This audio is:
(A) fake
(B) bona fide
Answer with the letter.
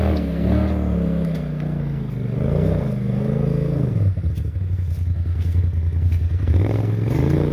A